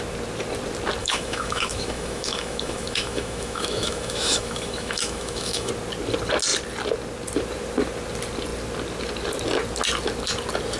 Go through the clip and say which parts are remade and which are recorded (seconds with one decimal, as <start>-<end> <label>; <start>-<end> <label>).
0.0-1.0 recorded; 1.0-5.7 remade; 5.7-10.8 recorded